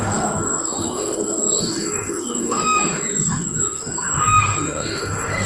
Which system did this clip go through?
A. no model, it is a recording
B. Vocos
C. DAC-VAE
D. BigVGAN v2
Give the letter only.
C